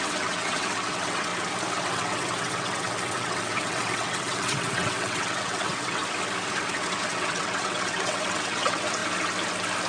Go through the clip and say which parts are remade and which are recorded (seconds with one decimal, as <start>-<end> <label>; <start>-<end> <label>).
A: 0.0-1.3 remade; 1.3-1.8 recorded; 1.8-6.0 remade; 6.0-6.5 recorded; 6.5-9.0 remade; 9.0-9.9 recorded